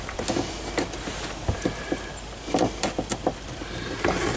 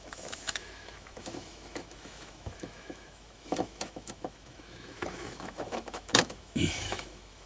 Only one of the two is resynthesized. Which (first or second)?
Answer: second